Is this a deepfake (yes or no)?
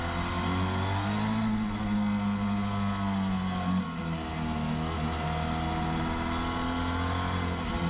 no